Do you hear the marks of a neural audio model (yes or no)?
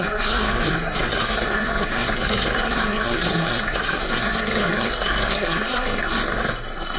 yes